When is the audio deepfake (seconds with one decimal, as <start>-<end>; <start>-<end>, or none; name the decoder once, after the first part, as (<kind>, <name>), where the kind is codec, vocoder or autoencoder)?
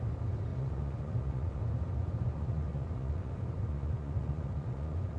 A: 0.5-1.6 (vocoder, Vocos); 2.2-5.2